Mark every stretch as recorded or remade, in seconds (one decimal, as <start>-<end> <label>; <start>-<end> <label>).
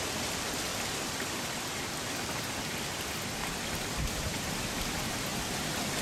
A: 0.0-3.4 recorded; 3.4-4.6 remade; 4.6-6.0 recorded